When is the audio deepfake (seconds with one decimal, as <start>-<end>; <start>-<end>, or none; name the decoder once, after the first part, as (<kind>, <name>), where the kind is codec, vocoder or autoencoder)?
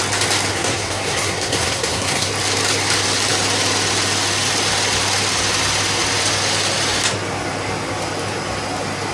0.5-2.3 (codec, SNAC)